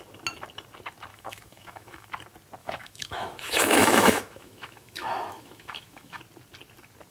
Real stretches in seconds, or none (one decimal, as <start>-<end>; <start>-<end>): 0.0-1.1; 2.1-2.6; 6.2-7.1